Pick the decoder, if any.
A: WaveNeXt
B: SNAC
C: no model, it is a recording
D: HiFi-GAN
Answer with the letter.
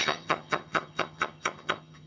D